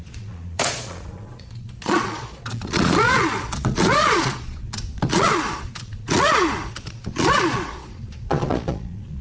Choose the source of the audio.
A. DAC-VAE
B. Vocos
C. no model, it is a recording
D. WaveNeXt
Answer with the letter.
B